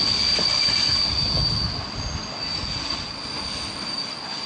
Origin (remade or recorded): recorded